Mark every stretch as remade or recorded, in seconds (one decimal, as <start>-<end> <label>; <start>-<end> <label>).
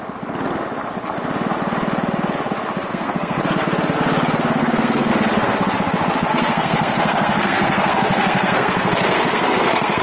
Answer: 0.0-2.9 recorded; 2.9-3.4 remade; 3.4-4.6 recorded; 4.6-5.1 remade; 5.1-6.3 recorded; 6.3-10.0 remade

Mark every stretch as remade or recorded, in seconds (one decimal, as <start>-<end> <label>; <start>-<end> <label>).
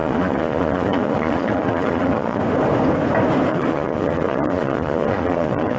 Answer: 0.0-2.4 remade; 2.4-3.5 recorded; 3.5-5.8 remade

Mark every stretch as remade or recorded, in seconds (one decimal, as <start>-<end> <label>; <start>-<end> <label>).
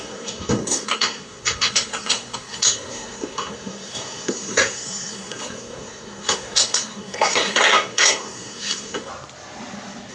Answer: 0.0-9.1 remade; 9.1-10.1 recorded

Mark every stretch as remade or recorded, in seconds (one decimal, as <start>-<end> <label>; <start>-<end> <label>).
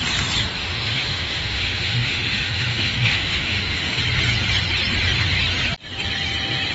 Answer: 0.0-0.6 recorded; 0.6-4.0 remade; 4.0-6.7 recorded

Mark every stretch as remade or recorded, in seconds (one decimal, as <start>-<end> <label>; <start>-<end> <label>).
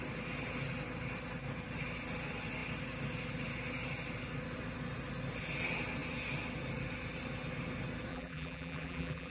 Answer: 0.0-8.1 recorded; 8.1-9.3 remade